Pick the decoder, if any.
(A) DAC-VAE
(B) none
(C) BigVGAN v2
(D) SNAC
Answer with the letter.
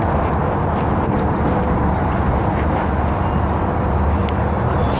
B